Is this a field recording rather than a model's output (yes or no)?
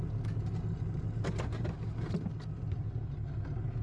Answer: yes